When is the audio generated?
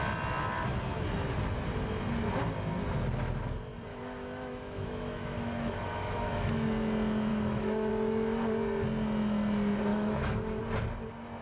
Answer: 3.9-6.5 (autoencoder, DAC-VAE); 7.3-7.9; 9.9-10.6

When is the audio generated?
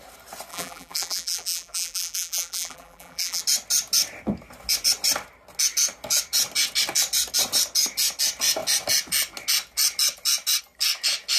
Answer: 0.5-3.4 (vocoder, BigVGAN v2)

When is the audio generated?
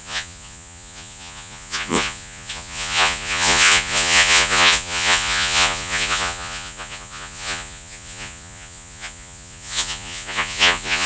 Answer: 0.0-11.1 (vocoder, Vocos)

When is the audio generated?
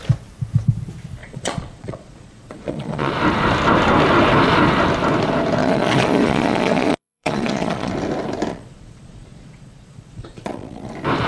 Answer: 1.2-3.1 (vocoder, Vocos); 5.6-7.9; 8.5-10.9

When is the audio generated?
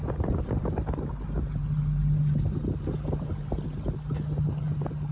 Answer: none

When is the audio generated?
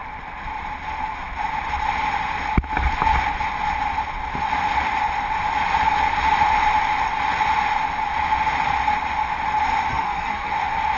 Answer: 9.9-10.5 (codec, SNAC)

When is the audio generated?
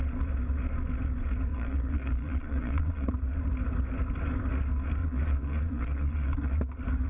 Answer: 1.5-3.1 (vocoder, Vocos); 5.0-6.6